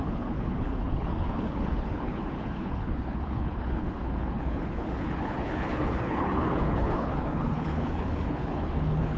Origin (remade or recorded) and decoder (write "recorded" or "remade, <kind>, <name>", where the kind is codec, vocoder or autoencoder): remade, codec, HILCodec